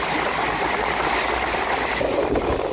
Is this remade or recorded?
recorded